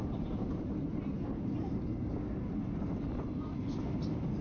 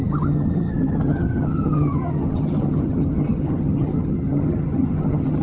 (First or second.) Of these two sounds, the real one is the first